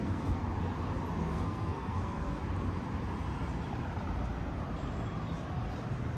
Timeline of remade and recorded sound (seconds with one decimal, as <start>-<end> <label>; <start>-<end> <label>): 0.0-0.4 remade; 0.4-1.2 recorded; 1.2-2.4 remade; 2.4-6.2 recorded

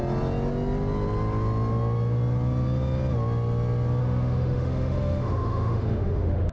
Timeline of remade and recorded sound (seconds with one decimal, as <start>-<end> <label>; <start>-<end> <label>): 0.0-4.0 recorded; 4.0-6.5 remade

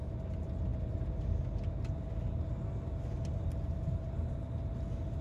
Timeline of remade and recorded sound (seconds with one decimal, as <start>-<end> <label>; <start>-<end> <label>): 0.0-5.2 recorded

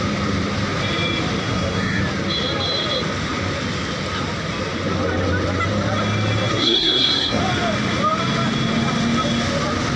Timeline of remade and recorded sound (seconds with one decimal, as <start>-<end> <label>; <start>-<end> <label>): 0.0-1.4 recorded; 1.4-2.0 remade; 2.0-6.5 recorded; 6.5-7.4 remade; 7.4-10.0 recorded

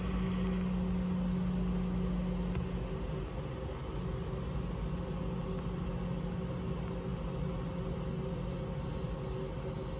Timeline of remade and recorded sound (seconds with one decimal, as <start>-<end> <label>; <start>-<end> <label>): 0.0-10.0 recorded